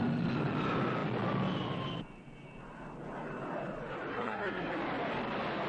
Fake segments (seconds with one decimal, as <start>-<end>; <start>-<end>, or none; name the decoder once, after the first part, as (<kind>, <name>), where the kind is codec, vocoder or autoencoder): 4.1-4.7 (codec, SNAC)